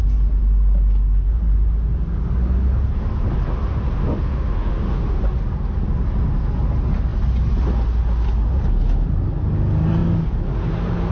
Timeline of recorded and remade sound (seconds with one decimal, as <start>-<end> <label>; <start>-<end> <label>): 0.0-4.0 recorded; 4.0-5.2 remade; 5.2-11.1 recorded